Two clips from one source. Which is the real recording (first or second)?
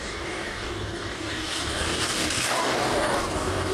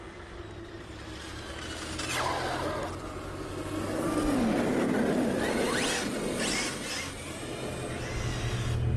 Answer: second